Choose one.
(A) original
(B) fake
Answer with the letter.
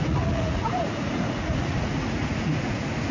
B